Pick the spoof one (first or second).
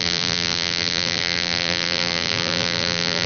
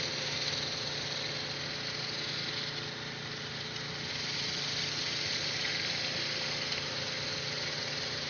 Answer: first